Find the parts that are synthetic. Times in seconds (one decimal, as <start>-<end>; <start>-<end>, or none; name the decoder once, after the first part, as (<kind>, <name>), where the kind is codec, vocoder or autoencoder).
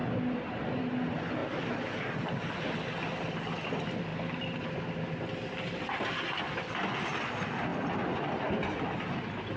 4.1-4.8 (vocoder, BigVGAN v2)